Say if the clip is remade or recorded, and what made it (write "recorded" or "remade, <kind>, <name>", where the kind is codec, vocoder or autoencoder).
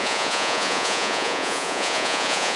remade, vocoder, Vocos